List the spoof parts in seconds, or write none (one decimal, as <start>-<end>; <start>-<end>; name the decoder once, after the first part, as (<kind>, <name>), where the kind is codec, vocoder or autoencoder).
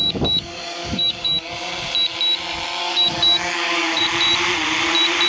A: 0.0-1.5 (codec, DAC); 2.8-4.0